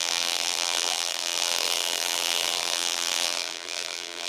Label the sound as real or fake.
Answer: fake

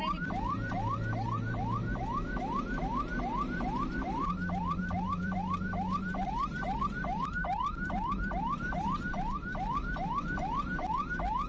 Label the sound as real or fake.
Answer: fake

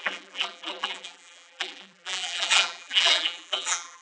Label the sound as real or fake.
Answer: fake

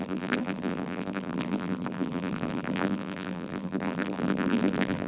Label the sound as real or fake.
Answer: fake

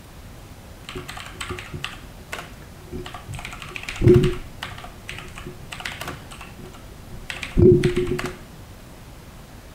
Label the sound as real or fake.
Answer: fake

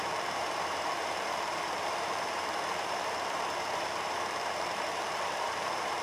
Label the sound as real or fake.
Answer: fake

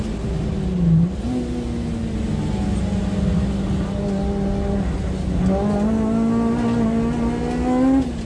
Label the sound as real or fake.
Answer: real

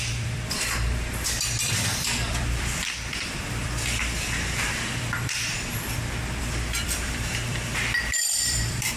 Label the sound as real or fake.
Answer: fake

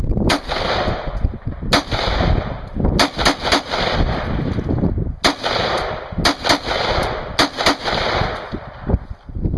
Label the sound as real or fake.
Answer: real